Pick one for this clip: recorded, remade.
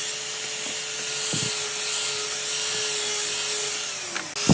recorded